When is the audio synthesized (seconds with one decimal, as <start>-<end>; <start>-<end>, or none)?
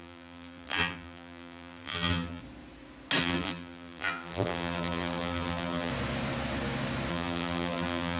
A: 0.0-2.4; 3.2-5.9; 7.1-8.2